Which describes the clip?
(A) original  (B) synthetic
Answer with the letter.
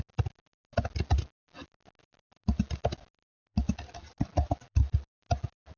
A